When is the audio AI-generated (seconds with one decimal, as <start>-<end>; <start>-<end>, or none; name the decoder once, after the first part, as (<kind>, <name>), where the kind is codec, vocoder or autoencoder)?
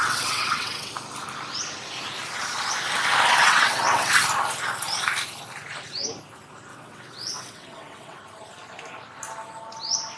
0.0-0.9 (vocoder, WaveNeXt); 3.4-4.1; 6.7-8.2